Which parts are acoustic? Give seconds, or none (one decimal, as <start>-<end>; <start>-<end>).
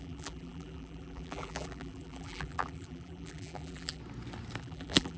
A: 4.0-4.6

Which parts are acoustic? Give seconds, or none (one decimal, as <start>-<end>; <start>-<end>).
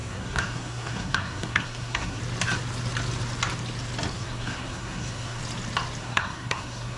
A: 2.2-4.1; 5.4-6.0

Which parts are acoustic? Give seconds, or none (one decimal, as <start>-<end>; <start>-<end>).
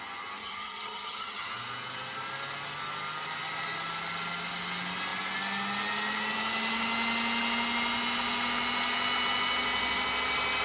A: 0.0-0.4; 1.5-10.6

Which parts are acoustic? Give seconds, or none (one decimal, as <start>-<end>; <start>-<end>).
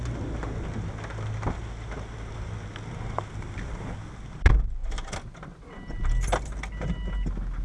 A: 0.0-7.6